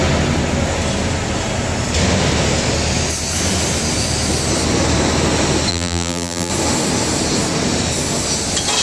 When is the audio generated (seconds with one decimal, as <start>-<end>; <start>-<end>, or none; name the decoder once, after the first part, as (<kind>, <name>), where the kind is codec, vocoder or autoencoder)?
5.7-6.5 (vocoder, BigVGAN v2)